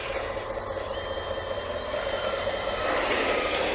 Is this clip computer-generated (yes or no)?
yes